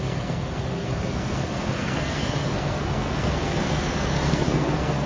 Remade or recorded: remade